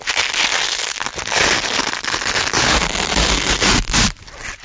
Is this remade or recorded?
recorded